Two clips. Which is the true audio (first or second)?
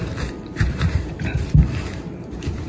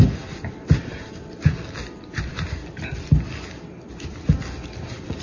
second